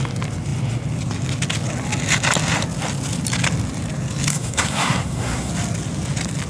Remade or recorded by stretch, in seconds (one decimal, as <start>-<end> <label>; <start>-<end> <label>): 0.0-4.3 recorded; 4.3-5.5 remade; 5.5-6.5 recorded